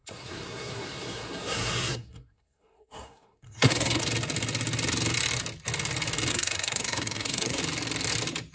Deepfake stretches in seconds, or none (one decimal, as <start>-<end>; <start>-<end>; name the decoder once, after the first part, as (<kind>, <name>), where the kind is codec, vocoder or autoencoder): 0.0-4.0 (codec, SNAC); 6.3-7.6